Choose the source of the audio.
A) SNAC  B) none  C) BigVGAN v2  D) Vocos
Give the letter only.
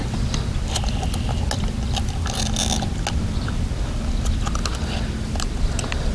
B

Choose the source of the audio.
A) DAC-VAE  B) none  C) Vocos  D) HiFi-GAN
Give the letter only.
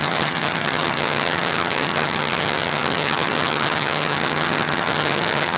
D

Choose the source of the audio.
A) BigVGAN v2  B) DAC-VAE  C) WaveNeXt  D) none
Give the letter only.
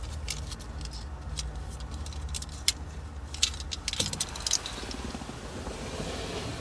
D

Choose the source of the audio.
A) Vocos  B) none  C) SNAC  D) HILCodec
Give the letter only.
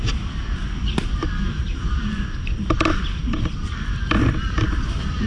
B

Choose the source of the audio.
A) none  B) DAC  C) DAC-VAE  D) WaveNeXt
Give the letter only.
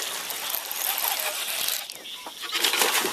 A